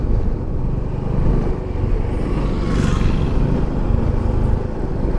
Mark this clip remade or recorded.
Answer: recorded